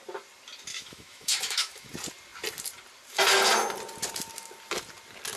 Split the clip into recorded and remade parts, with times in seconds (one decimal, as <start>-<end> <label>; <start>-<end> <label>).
0.0-0.7 recorded; 0.7-1.9 remade; 1.9-5.4 recorded